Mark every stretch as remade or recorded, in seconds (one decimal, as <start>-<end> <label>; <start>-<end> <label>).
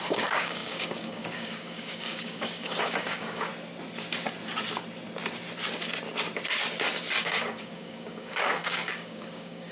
0.0-3.5 remade; 3.5-7.2 recorded; 7.2-9.7 remade